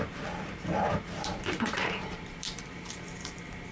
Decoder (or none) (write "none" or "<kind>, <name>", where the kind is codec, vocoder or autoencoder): vocoder, BigVGAN v2